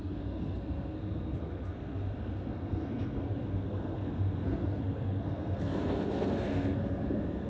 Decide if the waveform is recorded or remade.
remade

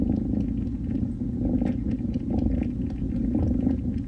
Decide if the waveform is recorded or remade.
recorded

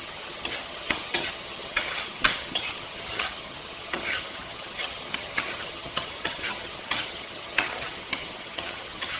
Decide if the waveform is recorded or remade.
remade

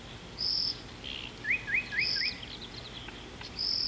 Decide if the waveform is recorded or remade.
recorded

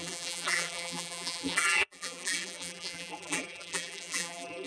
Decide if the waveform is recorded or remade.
remade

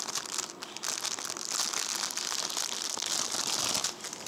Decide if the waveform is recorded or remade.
recorded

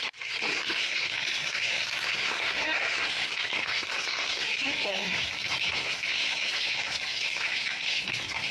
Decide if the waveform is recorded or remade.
remade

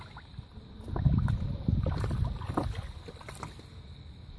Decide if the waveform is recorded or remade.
recorded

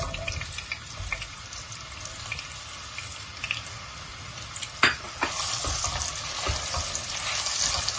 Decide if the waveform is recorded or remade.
recorded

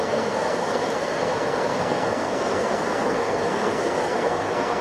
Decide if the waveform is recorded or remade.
remade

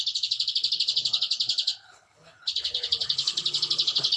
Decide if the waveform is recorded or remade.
remade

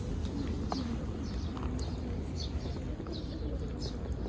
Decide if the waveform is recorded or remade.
recorded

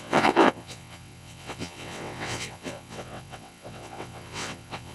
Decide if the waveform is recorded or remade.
remade